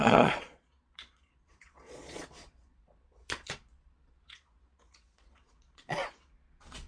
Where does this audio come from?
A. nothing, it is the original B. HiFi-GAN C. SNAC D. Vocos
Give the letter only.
D